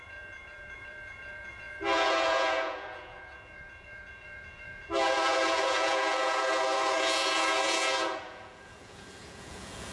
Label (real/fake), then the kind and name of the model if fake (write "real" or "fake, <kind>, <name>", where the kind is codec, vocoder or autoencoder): fake, vocoder, Vocos